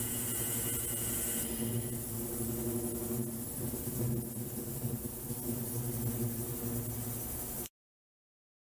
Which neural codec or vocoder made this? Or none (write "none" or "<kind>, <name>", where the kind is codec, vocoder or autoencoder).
none